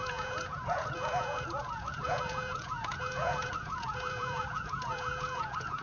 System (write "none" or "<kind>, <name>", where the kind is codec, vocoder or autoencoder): vocoder, Vocos